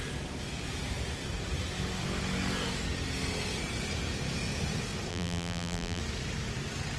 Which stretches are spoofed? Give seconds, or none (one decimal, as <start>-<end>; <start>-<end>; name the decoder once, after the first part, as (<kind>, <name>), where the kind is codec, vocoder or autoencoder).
5.1-6.0 (vocoder, BigVGAN v2)